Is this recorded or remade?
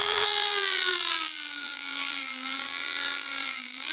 remade